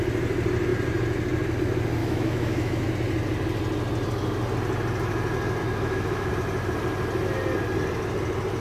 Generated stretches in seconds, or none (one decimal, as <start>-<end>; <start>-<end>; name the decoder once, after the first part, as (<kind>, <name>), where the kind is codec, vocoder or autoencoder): 2.0-2.9 (autoencoder, DAC-VAE); 5.6-6.3